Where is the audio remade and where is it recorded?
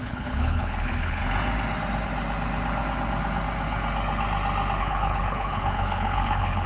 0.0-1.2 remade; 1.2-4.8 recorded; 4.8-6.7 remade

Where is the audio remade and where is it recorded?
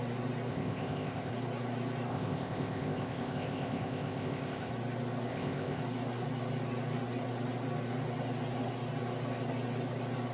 0.0-0.5 recorded; 0.5-1.3 remade; 1.3-2.1 recorded; 2.1-4.7 remade; 4.7-5.3 recorded; 5.3-5.8 remade; 5.8-10.3 recorded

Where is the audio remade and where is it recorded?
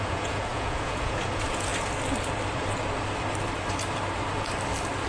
0.0-1.7 remade; 1.7-5.1 recorded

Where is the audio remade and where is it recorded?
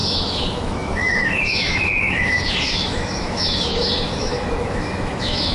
0.0-5.5 remade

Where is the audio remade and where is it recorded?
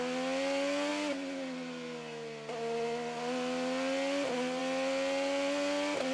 0.0-6.1 recorded